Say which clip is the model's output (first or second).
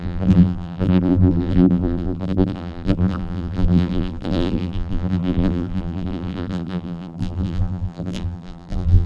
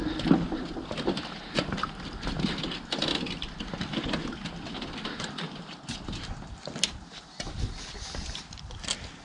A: first